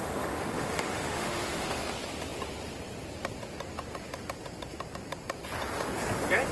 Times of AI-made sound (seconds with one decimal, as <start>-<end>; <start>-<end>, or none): 0.0-1.9